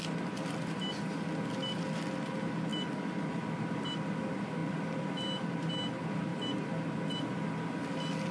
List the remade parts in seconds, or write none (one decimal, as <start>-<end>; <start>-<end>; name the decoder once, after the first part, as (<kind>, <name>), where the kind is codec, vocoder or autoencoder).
2.7-4.0 (vocoder, BigVGAN v2); 4.6-5.7